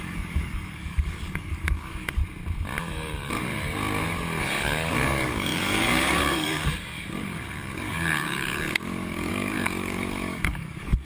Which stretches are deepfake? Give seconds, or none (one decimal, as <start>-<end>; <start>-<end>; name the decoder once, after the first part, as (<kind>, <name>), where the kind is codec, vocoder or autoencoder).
0.0-2.2 (codec, DAC); 2.8-3.5; 4.4-11.0

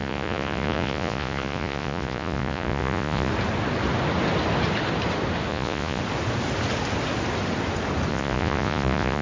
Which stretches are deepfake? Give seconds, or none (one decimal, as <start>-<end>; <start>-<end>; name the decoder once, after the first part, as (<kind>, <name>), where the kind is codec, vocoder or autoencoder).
0.0-3.3 (vocoder, Vocos); 5.5-6.0; 8.1-9.2

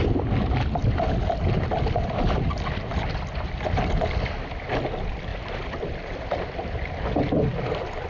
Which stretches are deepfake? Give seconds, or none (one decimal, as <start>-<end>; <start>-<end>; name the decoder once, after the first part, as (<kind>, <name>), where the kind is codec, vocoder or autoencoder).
0.0-5.3 (vocoder, BigVGAN v2); 5.8-8.1

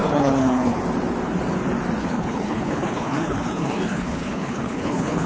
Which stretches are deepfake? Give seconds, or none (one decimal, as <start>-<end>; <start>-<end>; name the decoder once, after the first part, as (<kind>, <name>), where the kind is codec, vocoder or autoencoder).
0.0-0.8 (codec, HILCodec); 2.0-5.3